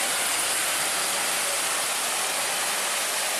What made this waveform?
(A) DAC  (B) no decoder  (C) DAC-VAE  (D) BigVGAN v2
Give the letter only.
B